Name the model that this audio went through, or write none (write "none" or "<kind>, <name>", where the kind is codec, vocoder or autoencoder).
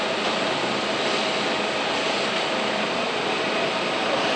none